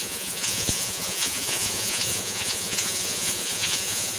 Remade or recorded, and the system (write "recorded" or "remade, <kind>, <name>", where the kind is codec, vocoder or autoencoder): remade, vocoder, Vocos